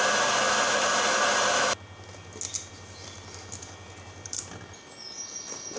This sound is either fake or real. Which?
real